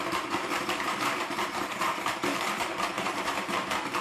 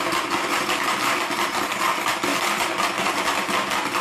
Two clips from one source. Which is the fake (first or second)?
first